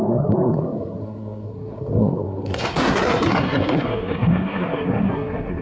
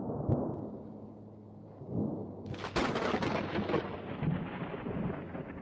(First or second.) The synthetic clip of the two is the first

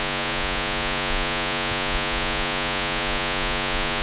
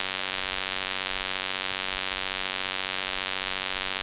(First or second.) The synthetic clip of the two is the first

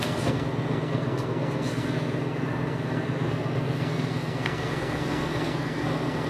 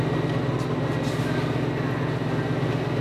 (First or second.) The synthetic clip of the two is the first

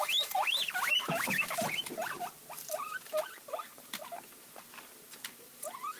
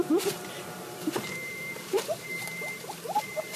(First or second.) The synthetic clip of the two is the second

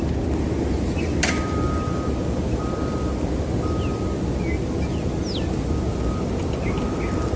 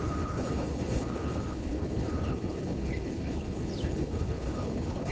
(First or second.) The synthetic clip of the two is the second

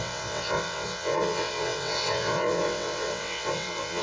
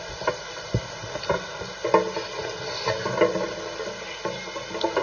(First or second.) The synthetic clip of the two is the first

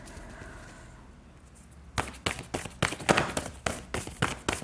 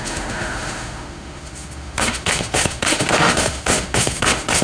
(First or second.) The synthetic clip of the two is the second